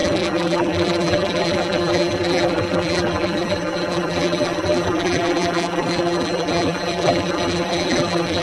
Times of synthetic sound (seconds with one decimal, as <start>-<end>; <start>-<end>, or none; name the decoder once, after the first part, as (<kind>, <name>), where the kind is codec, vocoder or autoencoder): 0.0-8.4 (vocoder, BigVGAN v2)